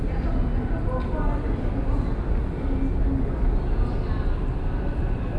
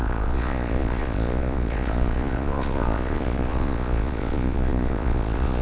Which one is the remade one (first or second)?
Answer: second